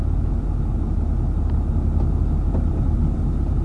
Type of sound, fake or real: real